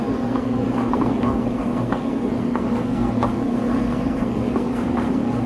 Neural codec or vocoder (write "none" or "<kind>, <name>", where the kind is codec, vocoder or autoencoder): codec, SNAC